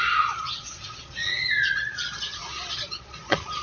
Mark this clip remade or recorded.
remade